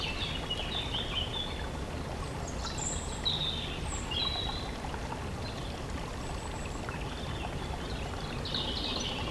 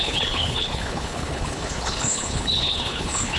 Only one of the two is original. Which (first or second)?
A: first